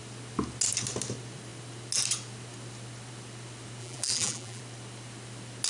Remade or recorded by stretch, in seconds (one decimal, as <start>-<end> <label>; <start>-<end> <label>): 0.0-3.8 recorded; 3.8-4.6 remade; 4.6-5.7 recorded